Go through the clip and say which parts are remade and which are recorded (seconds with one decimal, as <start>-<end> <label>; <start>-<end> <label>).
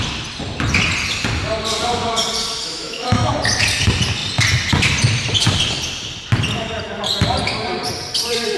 0.0-2.7 recorded; 2.7-3.3 remade; 3.3-8.6 recorded